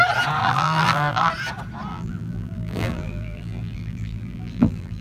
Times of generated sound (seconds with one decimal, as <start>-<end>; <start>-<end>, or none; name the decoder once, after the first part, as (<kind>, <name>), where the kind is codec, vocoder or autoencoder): 0.4-1.3 (vocoder, BigVGAN v2); 1.9-5.0